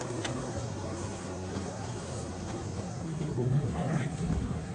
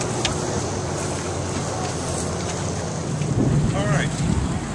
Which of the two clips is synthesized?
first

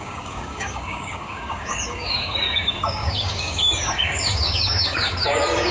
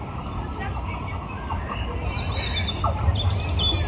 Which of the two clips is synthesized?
first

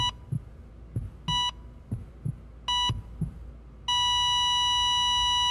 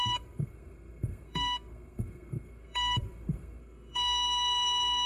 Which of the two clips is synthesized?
second